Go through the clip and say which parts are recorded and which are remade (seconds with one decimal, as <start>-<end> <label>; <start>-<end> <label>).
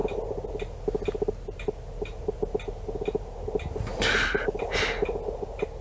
0.0-5.8 recorded